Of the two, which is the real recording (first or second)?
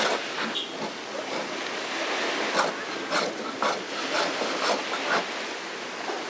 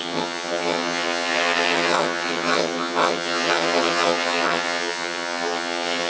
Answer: first